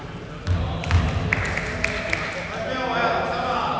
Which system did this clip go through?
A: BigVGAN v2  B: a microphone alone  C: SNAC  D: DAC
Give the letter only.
B